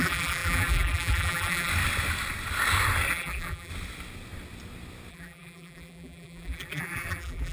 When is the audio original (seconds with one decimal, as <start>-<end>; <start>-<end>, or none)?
1.7-3.1; 3.7-5.1